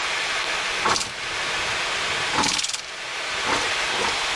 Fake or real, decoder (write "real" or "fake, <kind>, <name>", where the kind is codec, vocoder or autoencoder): real